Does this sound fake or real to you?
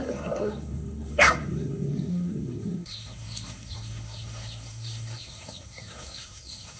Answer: fake